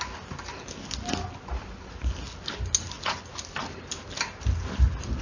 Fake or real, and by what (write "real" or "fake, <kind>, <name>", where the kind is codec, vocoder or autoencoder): real